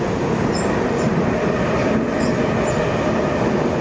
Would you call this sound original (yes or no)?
yes